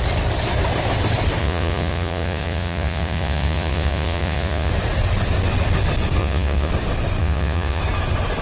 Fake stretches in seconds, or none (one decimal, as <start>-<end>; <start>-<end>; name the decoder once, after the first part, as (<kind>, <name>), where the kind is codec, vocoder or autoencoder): 1.4-4.7 (vocoder, Vocos); 6.2-6.7; 7.2-7.8